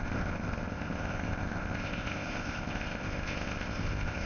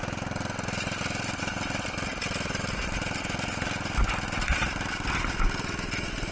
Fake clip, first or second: first